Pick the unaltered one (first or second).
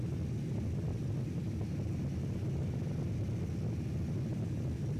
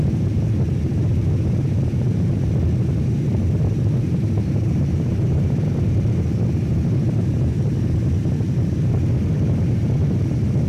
first